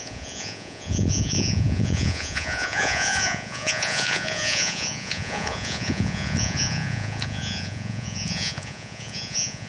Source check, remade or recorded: remade